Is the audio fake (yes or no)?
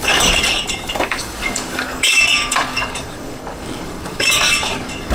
yes